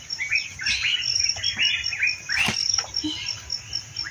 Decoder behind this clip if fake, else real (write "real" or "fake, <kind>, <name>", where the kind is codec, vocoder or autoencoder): real